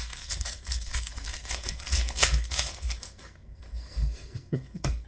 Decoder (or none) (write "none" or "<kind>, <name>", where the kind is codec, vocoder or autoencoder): codec, SNAC